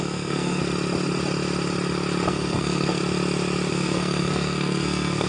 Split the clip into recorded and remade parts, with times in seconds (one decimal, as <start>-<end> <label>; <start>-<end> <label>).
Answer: 0.0-0.6 remade; 0.6-2.3 recorded; 2.3-3.0 remade; 3.0-3.7 recorded; 3.7-5.3 remade